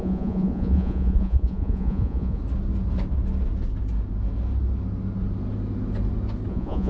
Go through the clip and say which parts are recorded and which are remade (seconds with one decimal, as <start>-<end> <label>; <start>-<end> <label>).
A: 0.0-2.4 remade; 2.4-6.5 recorded; 6.5-6.9 remade